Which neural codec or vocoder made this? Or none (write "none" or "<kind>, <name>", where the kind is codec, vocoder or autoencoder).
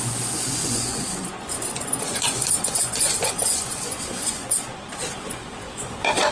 vocoder, Vocos